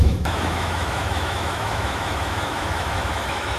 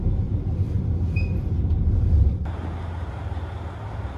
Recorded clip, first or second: second